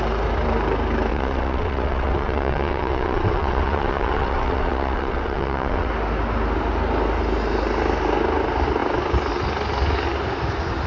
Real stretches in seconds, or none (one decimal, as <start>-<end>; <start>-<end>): 0.0-1.1; 5.9-10.9